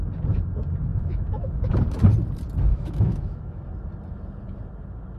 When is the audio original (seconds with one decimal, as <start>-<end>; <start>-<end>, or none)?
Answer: 0.0-0.9; 1.7-2.7; 3.6-5.2